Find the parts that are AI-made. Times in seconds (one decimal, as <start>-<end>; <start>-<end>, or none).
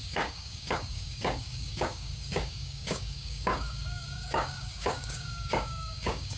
0.0-6.4